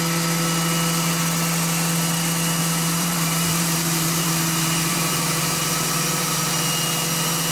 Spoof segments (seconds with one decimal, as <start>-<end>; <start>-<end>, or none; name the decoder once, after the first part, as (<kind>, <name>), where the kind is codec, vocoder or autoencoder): 2.6-6.5 (vocoder, BigVGAN v2)